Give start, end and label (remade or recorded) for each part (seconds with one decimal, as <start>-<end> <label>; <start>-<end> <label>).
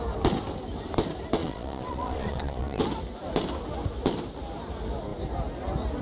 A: 0.0-1.4 recorded; 1.4-2.8 remade; 2.8-6.0 recorded